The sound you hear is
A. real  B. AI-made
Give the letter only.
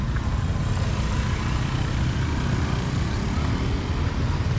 A